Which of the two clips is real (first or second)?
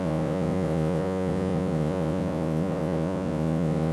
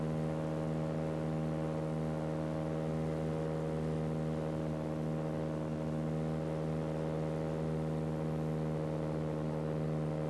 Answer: second